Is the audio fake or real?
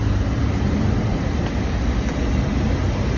fake